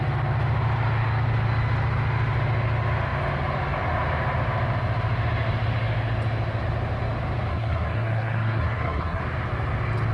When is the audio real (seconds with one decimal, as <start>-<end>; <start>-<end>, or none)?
0.0-7.5; 9.2-10.1